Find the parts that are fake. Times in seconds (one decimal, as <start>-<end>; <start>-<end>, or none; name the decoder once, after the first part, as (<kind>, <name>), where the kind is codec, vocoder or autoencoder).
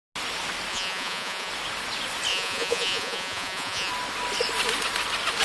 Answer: 0.7-1.5 (vocoder, Vocos); 2.3-3.9